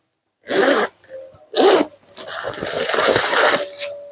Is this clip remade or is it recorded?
recorded